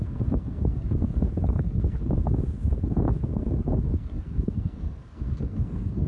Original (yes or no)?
no